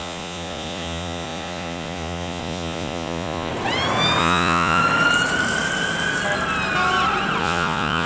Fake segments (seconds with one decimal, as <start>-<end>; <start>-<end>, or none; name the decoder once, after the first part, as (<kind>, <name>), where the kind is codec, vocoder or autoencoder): 0.0-3.5 (vocoder, Vocos); 4.2-4.8; 7.4-8.1